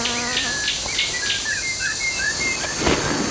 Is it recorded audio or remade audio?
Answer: recorded